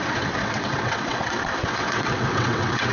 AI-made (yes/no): yes